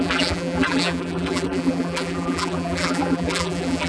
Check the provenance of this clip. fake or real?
fake